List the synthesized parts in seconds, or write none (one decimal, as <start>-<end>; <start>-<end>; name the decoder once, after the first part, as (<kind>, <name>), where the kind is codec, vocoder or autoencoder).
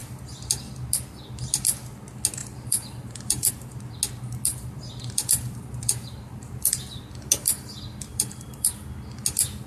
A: 2.4-3.5 (vocoder, BigVGAN v2); 4.5-7.0; 8.1-8.7